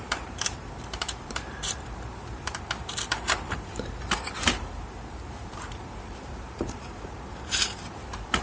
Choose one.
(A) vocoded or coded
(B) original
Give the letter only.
A